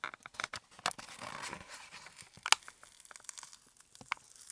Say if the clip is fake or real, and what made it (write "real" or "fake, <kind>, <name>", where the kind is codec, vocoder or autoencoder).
real